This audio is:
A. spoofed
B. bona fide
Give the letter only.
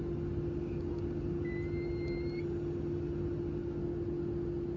B